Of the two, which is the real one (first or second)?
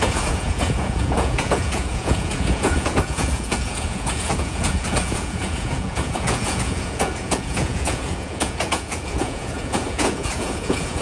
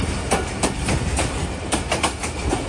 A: second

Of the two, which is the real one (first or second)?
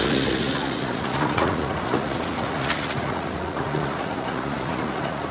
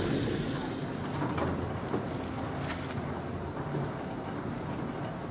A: second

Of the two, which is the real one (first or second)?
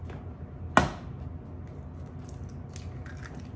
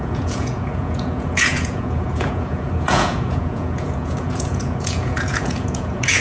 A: first